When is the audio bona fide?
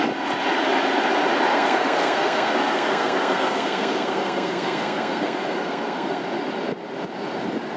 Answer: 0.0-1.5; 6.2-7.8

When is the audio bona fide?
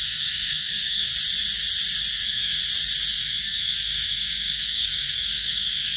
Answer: 1.1-2.1; 2.6-3.1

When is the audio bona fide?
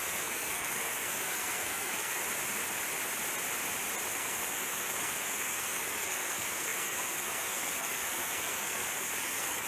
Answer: 2.2-4.1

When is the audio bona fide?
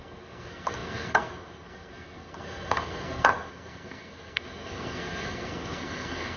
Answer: none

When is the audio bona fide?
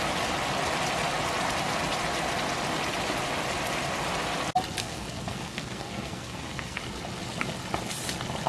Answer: 0.0-4.8; 6.8-8.5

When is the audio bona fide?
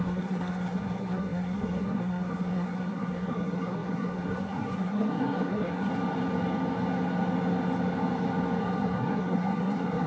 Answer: 5.9-8.6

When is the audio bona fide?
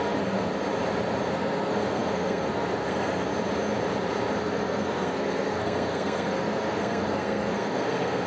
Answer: 0.5-1.3; 3.3-4.4